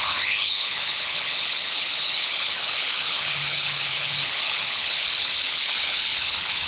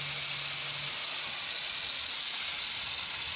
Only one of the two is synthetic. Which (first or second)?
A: first